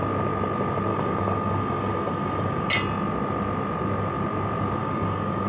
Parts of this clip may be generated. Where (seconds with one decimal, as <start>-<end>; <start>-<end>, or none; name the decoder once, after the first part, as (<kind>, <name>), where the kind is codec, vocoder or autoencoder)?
0.9-2.7 (codec, DAC); 4.8-5.5